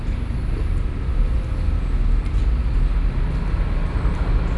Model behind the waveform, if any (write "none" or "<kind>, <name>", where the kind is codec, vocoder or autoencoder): none